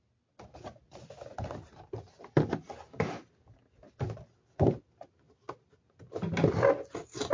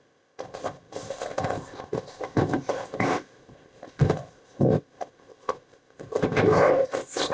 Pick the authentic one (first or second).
first